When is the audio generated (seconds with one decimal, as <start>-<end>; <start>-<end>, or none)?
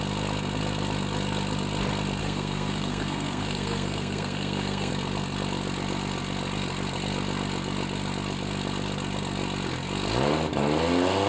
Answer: 2.2-4.9